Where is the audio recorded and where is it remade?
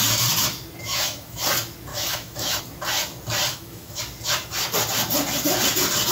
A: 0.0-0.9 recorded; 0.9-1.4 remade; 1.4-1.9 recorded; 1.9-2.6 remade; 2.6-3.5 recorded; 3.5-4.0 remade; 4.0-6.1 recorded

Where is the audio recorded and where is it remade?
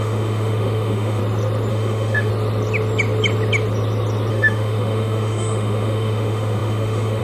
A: 0.0-1.2 remade; 1.2-1.7 recorded; 1.7-2.3 remade; 2.3-4.3 recorded; 4.3-7.2 remade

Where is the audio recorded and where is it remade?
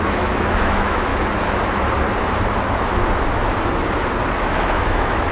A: 0.0-1.1 remade; 1.1-4.3 recorded; 4.3-5.3 remade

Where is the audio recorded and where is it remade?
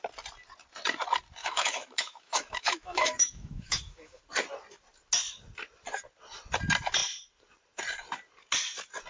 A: 0.0-1.4 recorded; 1.4-4.2 remade; 4.2-9.1 recorded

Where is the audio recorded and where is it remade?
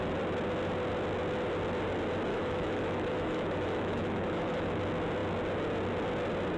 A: 0.0-2.3 recorded; 2.3-4.8 remade; 4.8-6.6 recorded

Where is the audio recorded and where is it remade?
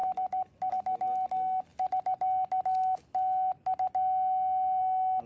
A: 0.0-5.3 recorded